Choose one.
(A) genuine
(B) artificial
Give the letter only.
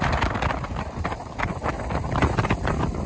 A